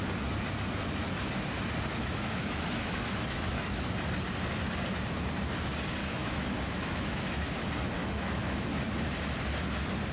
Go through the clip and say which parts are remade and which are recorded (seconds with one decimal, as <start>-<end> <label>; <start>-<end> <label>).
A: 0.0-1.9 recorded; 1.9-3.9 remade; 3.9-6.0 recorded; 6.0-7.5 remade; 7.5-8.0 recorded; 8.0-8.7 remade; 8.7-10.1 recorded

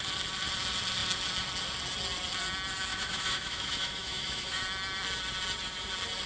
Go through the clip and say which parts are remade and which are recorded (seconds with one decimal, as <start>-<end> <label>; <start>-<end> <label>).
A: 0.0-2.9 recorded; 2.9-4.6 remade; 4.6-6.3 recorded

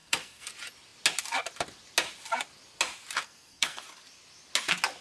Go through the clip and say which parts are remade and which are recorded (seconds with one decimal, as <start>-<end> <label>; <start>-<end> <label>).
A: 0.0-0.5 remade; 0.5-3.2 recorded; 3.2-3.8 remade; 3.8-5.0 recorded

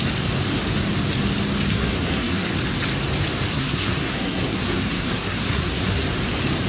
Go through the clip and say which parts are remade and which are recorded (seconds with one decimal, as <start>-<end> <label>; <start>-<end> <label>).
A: 0.0-1.7 recorded; 1.7-2.5 remade; 2.5-3.5 recorded; 3.5-6.0 remade; 6.0-6.7 recorded